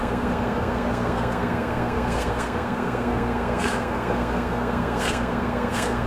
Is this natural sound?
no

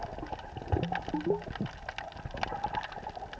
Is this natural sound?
yes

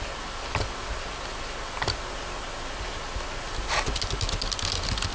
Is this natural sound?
yes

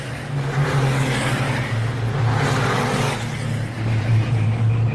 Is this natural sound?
yes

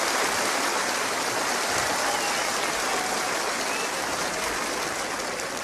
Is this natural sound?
yes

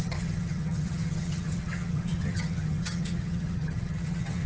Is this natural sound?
no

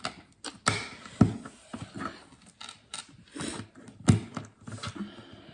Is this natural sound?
yes